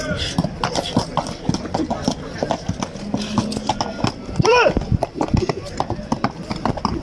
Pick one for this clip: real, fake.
real